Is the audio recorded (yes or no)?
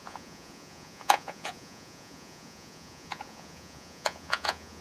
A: no